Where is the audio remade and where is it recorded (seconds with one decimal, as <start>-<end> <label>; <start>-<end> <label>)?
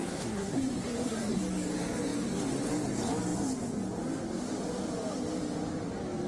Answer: 0.0-1.4 remade; 1.4-6.3 recorded